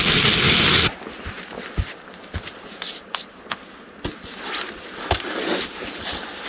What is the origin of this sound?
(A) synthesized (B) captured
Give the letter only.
B